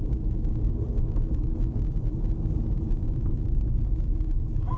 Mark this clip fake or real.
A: real